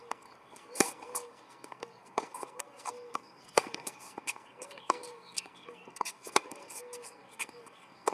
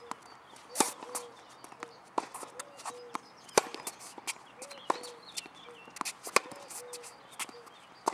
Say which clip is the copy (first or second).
first